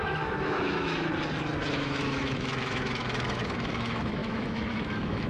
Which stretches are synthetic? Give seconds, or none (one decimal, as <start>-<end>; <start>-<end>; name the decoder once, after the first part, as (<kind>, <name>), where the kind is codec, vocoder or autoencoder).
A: 0.0-1.1 (autoencoder, DAC-VAE); 1.7-5.3